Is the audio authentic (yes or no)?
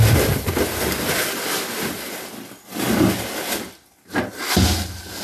yes